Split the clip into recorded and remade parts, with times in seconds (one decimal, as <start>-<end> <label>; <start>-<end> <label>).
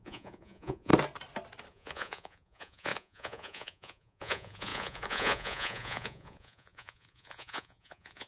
0.0-0.9 remade; 0.9-1.7 recorded; 1.7-8.3 remade